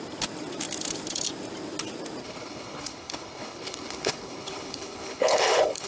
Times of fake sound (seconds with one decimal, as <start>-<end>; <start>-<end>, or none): 2.2-5.9